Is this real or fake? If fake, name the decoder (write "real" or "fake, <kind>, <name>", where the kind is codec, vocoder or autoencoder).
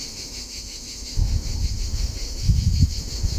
fake, autoencoder, DAC-VAE